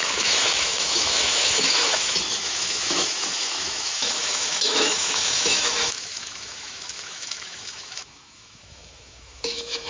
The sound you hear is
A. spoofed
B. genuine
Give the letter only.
A